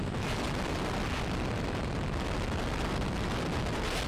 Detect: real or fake real